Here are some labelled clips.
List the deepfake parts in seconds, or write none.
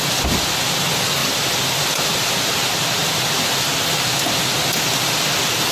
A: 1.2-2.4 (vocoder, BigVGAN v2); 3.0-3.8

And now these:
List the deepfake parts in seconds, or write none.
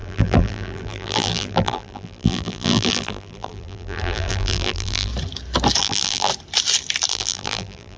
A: 0.0-5.1 (vocoder, BigVGAN v2); 5.8-6.3; 7.1-8.0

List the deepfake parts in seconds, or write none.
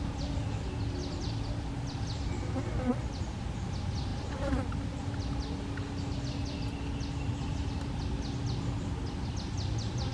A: 1.0-3.2 (vocoder, BigVGAN v2)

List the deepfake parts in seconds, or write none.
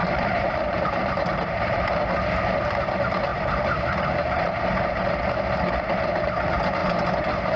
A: 0.0-2.0 (vocoder, BigVGAN v2); 3.3-4.4; 6.8-7.6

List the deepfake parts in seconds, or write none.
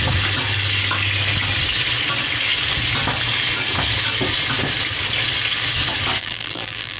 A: 6.2-7.0 (vocoder, BigVGAN v2)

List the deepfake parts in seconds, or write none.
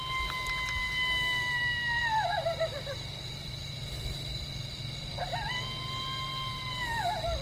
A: 2.0-5.1 (vocoder, BigVGAN v2)